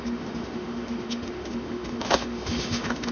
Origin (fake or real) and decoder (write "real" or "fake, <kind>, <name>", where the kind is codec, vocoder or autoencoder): fake, autoencoder, DAC-VAE